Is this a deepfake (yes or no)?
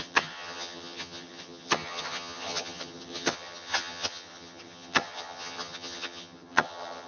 yes